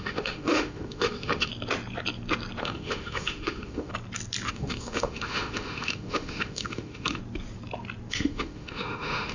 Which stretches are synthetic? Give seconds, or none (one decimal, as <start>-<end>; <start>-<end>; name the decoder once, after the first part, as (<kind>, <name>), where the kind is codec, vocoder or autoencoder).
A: 0.0-1.5 (autoencoder, DAC-VAE); 2.6-3.9; 4.5-7.2; 8.1-9.3